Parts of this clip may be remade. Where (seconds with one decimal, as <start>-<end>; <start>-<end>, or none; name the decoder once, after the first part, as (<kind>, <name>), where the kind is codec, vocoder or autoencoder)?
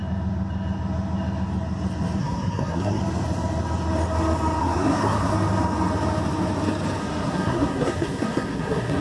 2.2-3.0 (codec, SNAC); 4.6-5.3; 7.0-9.0